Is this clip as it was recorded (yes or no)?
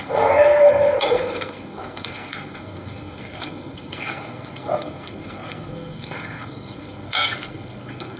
no